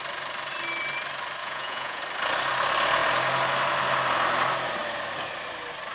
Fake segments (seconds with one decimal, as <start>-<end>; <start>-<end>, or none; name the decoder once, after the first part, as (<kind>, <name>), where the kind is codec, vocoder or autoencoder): 1.4-2.0 (vocoder, Vocos)